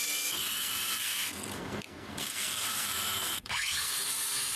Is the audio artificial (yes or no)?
yes